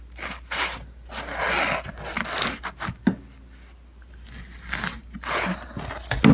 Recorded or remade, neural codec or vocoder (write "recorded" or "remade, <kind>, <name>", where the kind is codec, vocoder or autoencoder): recorded